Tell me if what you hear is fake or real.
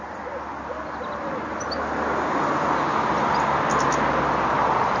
real